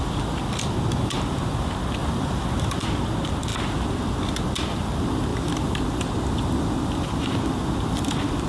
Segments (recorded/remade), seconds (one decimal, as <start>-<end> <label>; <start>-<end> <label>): 0.0-2.0 recorded; 2.0-2.8 remade; 2.8-5.3 recorded; 5.3-8.5 remade